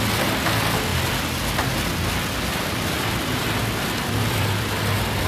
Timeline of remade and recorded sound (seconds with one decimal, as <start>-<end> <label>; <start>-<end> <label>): 0.0-0.9 recorded; 0.9-1.9 remade; 1.9-2.5 recorded; 2.5-5.3 remade